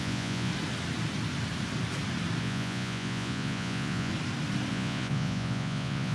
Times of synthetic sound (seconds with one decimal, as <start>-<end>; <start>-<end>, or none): 0.0-0.5; 2.4-4.1; 4.7-6.1